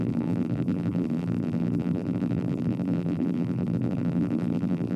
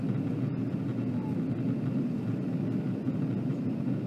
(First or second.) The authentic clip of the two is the second